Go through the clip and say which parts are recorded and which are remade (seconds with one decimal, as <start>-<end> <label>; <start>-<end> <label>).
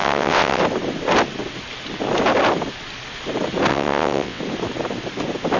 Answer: 0.0-0.6 remade; 0.6-3.7 recorded; 3.7-4.4 remade; 4.4-5.6 recorded